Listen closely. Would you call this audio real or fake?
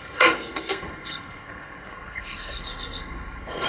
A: fake